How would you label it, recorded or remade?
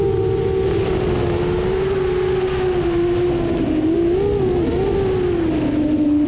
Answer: recorded